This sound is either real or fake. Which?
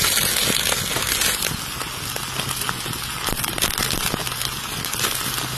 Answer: real